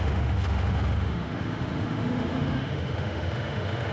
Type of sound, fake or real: fake